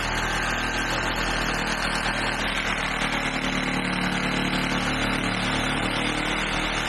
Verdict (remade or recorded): recorded